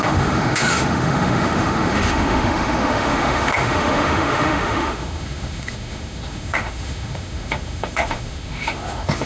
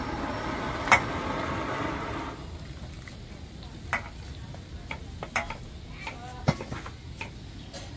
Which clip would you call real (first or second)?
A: second